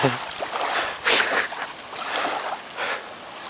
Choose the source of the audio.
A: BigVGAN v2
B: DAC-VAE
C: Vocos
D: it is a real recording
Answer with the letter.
D